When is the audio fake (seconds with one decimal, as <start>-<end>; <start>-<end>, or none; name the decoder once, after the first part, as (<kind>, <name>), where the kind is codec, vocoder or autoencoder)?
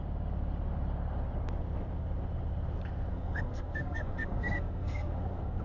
3.1-5.6 (codec, SNAC)